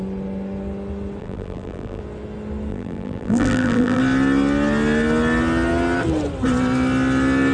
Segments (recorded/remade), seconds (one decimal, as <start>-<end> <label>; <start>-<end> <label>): 0.0-1.2 recorded; 1.2-2.0 remade; 2.0-2.7 recorded; 2.7-4.0 remade; 4.0-7.5 recorded